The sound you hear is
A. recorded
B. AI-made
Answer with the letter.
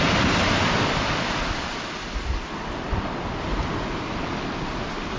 A